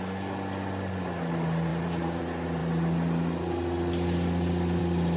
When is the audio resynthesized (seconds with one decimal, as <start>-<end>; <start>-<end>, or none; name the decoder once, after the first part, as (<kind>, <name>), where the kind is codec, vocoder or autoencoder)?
1.7-2.2 (vocoder, BigVGAN v2)